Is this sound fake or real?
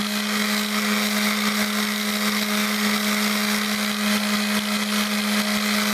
real